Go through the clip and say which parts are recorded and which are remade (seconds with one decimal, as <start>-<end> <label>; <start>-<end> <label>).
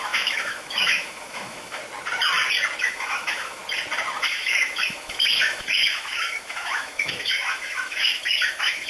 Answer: 0.0-1.8 remade; 1.8-2.8 recorded; 2.8-3.6 remade; 3.6-4.2 recorded; 4.2-8.9 remade